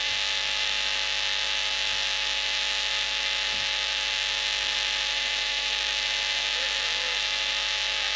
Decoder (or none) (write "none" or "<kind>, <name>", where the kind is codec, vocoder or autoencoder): autoencoder, DAC-VAE